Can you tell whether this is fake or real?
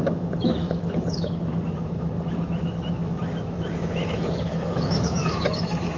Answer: fake